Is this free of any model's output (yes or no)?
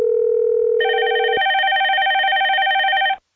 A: yes